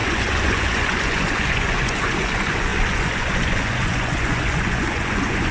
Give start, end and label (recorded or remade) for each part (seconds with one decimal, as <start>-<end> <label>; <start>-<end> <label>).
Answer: 0.0-5.5 remade